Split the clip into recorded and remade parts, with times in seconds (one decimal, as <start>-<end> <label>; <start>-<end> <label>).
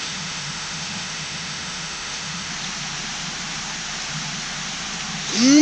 0.0-2.5 remade; 2.5-5.6 recorded